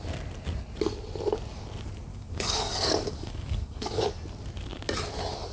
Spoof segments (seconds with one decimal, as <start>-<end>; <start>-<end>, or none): 2.1-4.0